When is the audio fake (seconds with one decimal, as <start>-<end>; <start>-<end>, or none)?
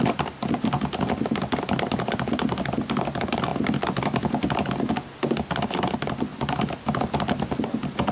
none